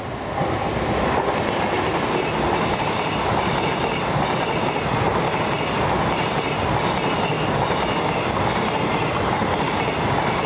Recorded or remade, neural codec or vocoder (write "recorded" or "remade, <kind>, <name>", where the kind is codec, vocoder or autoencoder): recorded